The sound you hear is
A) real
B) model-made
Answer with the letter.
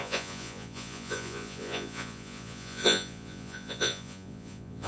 B